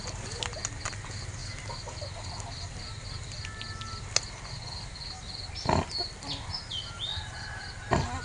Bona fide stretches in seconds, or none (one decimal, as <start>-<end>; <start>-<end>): 0.0-1.4; 2.8-7.1; 7.6-8.2